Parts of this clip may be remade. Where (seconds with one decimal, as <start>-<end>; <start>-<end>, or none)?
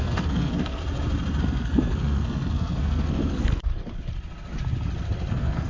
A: 0.0-0.8; 1.4-3.7; 5.3-5.7